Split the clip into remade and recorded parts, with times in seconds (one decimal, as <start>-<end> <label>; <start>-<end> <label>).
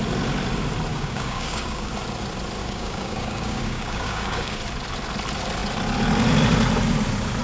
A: 0.0-0.9 recorded; 0.9-1.9 remade; 1.9-2.6 recorded; 2.6-4.6 remade; 4.6-7.4 recorded